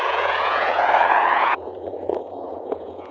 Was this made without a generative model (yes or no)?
no